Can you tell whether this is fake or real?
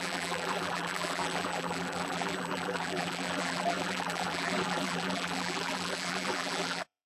fake